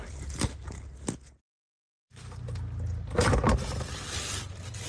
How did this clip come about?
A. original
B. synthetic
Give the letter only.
A